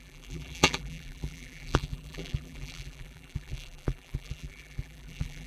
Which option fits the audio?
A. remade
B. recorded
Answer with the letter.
A